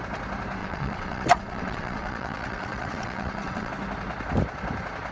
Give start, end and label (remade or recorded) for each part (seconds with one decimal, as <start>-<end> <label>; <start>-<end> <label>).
0.0-0.6 recorded; 0.6-3.7 remade; 3.7-5.1 recorded